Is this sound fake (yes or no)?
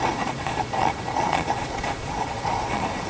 yes